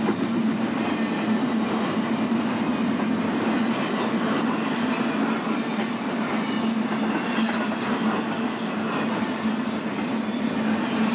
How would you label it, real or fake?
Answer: real